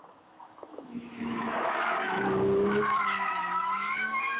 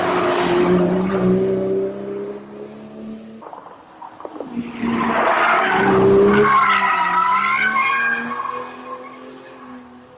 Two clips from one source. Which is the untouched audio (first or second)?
second